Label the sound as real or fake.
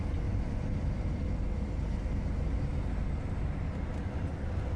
real